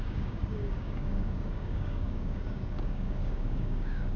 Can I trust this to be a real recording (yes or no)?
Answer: no